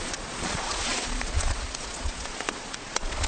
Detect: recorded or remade remade